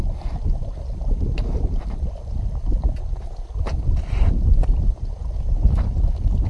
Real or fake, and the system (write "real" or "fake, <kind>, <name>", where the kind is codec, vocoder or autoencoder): real